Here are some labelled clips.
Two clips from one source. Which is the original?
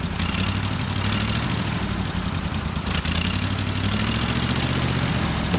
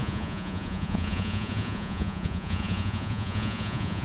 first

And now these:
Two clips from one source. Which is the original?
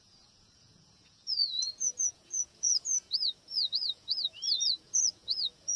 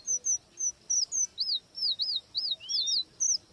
second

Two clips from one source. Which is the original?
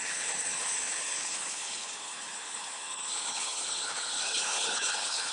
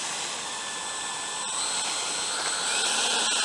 second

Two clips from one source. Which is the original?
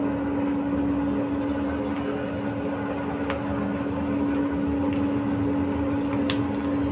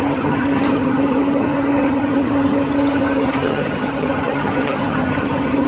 first